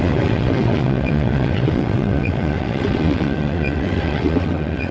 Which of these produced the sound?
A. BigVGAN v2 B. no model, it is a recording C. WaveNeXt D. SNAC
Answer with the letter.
C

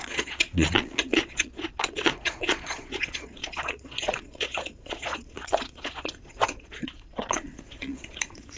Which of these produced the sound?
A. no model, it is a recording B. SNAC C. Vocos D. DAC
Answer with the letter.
C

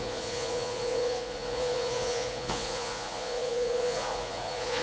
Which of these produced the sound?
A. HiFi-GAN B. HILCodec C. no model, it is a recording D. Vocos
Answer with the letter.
D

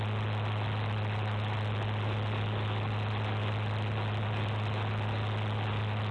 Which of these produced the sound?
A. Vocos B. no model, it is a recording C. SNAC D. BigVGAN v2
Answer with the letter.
B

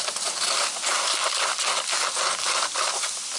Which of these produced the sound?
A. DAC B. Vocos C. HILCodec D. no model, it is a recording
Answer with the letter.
D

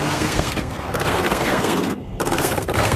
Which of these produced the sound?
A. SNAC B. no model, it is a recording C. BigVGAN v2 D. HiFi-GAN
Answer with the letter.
A